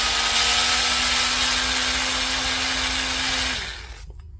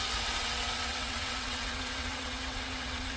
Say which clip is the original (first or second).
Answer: first